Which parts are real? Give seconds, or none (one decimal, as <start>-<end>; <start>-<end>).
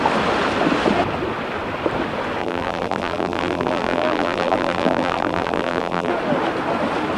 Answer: 0.0-2.4; 6.1-7.2